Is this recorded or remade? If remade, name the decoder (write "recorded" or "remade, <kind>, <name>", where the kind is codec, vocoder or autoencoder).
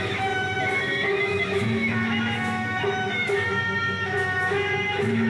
remade, autoencoder, DAC-VAE